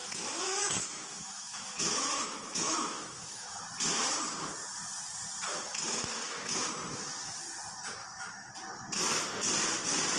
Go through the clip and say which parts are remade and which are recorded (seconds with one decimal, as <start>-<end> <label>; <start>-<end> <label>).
0.0-3.6 remade; 3.6-5.5 recorded; 5.5-6.7 remade; 6.7-8.0 recorded; 8.0-8.5 remade; 8.5-10.2 recorded

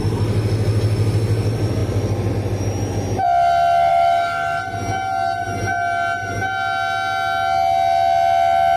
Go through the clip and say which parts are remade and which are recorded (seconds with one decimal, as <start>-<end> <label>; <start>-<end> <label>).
0.0-3.9 recorded; 3.9-4.6 remade; 4.6-8.8 recorded

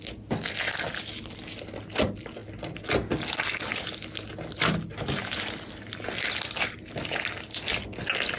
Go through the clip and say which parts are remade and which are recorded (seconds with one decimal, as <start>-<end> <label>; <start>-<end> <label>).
0.0-8.4 recorded

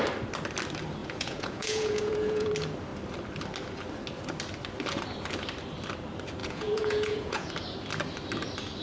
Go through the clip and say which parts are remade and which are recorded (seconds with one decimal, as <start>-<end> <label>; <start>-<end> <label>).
0.0-1.0 recorded; 1.0-2.5 remade; 2.5-6.4 recorded; 6.4-7.5 remade; 7.5-8.8 recorded

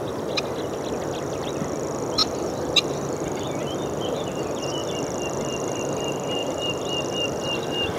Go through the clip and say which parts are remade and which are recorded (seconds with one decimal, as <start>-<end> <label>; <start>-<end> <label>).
0.0-2.2 recorded; 2.2-2.9 remade; 2.9-4.8 recorded; 4.8-5.8 remade; 5.8-8.0 recorded

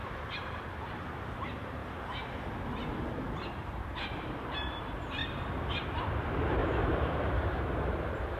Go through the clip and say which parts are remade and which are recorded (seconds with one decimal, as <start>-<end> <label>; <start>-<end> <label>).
0.0-1.8 remade; 1.8-3.0 recorded; 3.0-5.2 remade; 5.2-6.0 recorded; 6.0-8.4 remade

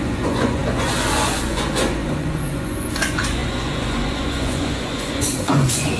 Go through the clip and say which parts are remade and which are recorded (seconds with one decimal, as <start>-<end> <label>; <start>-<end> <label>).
0.0-6.0 remade